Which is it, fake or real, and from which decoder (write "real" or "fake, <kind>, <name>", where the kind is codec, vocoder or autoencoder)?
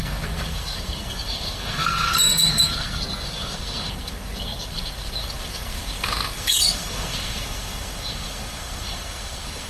fake, codec, SNAC